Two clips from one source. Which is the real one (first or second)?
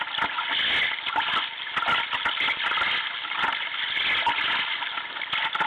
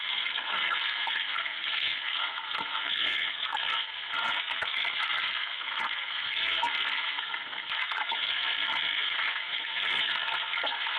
first